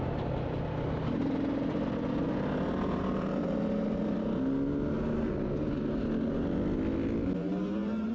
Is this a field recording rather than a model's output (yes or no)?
yes